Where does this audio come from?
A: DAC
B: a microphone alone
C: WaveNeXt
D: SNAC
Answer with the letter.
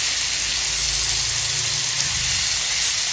B